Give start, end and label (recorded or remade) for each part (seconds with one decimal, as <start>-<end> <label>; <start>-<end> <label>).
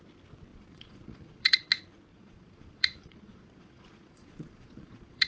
0.0-0.5 recorded; 0.5-1.7 remade; 1.7-2.1 recorded; 2.1-5.3 remade